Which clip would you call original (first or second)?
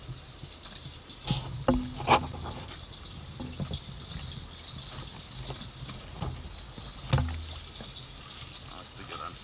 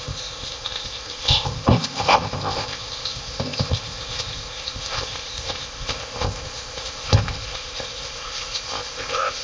first